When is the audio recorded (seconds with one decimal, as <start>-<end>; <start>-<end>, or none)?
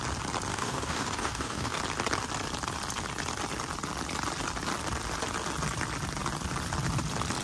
0.0-0.5; 1.8-7.4